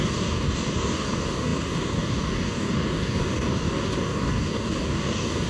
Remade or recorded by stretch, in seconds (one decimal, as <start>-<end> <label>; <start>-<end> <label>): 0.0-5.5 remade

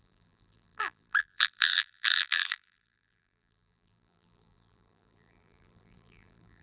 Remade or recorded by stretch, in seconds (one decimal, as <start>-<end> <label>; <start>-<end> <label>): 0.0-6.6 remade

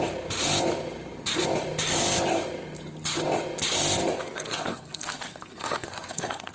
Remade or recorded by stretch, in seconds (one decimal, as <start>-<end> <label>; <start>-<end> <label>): 0.0-4.0 recorded; 4.0-6.5 remade